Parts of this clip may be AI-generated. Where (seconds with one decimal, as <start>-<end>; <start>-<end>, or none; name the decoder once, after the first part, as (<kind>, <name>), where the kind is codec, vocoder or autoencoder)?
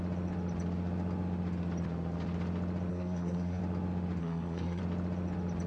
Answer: 2.9-3.6 (codec, SNAC); 4.2-4.8